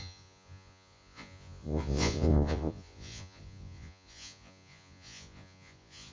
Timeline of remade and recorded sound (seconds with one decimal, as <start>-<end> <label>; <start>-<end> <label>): 0.0-6.1 remade